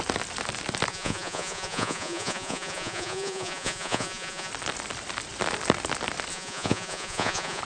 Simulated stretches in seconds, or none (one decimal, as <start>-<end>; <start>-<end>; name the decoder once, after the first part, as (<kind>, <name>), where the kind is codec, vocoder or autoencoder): 0.9-4.5 (vocoder, Vocos); 6.3-7.6